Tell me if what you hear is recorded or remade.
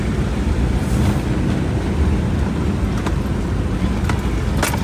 recorded